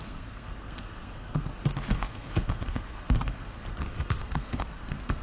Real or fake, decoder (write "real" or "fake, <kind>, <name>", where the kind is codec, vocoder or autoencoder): fake, codec, SNAC